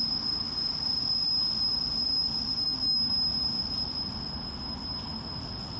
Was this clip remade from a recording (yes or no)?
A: no